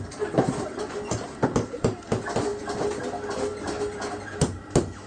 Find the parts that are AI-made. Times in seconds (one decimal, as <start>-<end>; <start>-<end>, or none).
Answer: none